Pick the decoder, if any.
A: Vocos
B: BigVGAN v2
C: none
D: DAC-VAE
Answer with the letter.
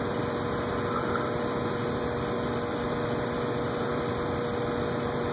C